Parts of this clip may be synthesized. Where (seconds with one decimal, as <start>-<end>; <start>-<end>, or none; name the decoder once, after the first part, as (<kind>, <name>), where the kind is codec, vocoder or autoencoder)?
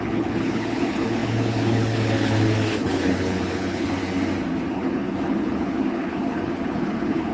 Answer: 0.0-4.0 (codec, HILCodec); 4.7-7.3